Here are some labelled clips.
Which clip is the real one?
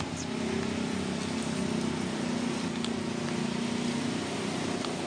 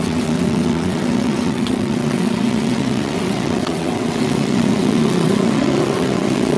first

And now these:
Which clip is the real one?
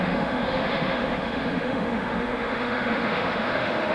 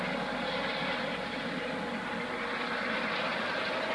second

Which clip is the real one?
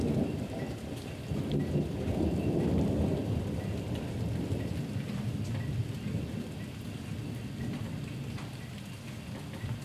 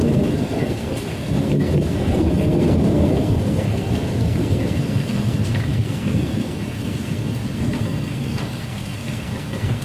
first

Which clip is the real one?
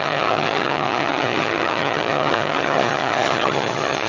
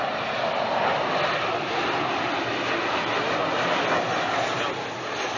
second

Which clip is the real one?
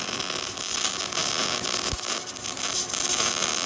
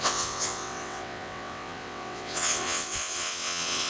first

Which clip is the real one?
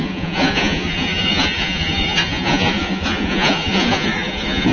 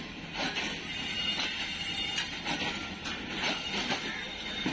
second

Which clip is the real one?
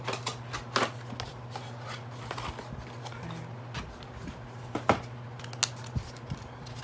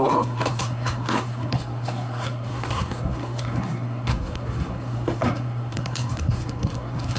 first